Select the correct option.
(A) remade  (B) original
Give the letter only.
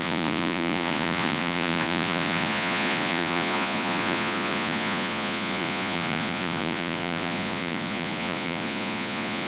A